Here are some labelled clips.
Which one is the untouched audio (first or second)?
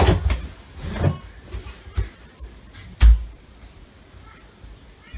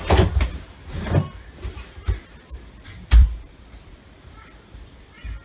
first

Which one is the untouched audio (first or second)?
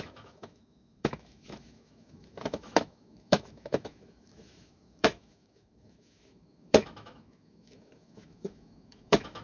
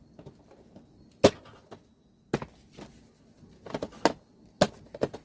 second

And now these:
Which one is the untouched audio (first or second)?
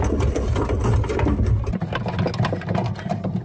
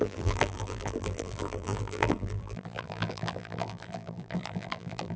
first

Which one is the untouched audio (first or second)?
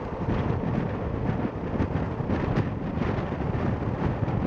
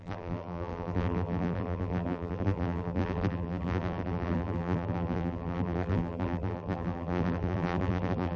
first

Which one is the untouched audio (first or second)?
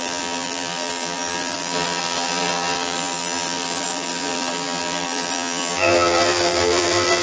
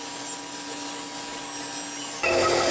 second